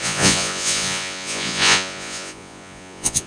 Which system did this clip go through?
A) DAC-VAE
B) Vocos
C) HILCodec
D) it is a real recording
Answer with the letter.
B